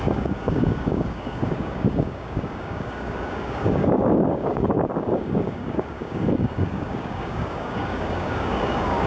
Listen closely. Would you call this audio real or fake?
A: fake